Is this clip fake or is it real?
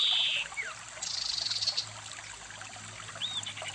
real